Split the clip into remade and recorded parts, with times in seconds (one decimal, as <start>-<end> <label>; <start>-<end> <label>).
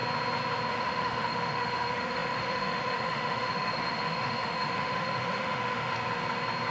0.0-0.7 recorded; 0.7-5.9 remade; 5.9-6.7 recorded